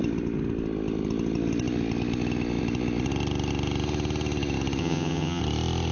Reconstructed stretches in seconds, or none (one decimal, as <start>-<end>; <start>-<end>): 4.8-5.4